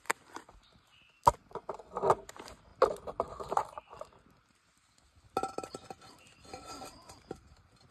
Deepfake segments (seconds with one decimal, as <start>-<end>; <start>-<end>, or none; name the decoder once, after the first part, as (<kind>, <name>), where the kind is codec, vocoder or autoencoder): none